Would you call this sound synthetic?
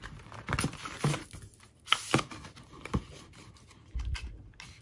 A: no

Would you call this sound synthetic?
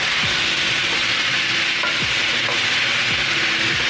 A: no